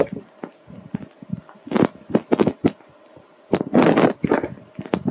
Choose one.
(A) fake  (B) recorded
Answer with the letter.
A